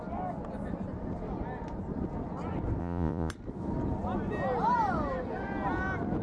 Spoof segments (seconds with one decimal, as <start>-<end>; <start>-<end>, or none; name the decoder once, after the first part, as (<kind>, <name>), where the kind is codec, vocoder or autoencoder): 2.8-3.3 (vocoder, Vocos)